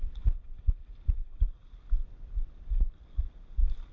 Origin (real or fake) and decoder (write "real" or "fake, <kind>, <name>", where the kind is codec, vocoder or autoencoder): real